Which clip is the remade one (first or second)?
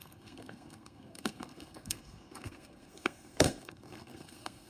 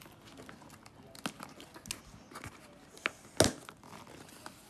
first